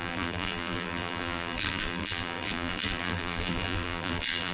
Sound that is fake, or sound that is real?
fake